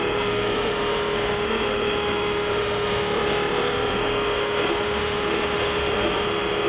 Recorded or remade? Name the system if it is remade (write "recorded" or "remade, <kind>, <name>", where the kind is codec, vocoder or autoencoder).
remade, autoencoder, DAC-VAE